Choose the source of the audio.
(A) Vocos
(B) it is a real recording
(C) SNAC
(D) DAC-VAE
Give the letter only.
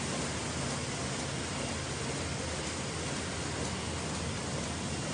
B